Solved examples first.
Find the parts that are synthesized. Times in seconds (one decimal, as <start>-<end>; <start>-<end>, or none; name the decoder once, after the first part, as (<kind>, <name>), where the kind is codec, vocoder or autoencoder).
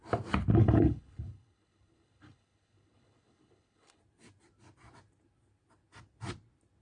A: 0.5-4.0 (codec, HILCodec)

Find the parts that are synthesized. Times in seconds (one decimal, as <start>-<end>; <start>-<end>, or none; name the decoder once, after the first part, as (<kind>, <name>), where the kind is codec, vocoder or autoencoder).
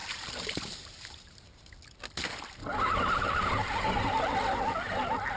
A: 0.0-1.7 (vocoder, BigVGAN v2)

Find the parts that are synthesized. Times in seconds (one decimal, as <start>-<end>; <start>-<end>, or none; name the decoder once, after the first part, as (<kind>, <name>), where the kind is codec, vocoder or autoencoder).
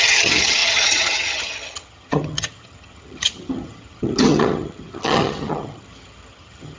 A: 0.0-6.8 (vocoder, HiFi-GAN)